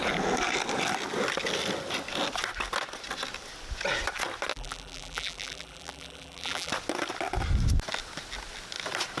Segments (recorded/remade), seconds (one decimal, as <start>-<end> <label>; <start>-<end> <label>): 0.0-4.5 recorded; 4.5-6.7 remade; 6.7-9.2 recorded

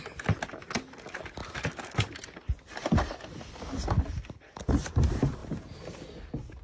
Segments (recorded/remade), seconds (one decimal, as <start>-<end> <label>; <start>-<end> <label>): 0.0-1.4 recorded; 1.4-4.7 remade; 4.7-6.6 recorded

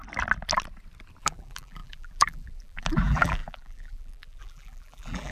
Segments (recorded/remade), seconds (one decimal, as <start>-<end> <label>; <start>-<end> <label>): 0.0-1.2 recorded; 1.2-5.3 remade

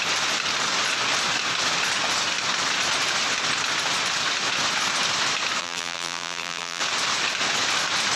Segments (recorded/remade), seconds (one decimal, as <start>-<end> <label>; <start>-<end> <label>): 0.0-5.6 recorded; 5.6-6.8 remade; 6.8-8.2 recorded